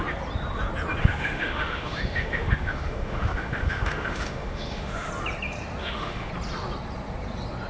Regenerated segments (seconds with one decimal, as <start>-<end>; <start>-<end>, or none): 1.0-5.1; 5.8-6.3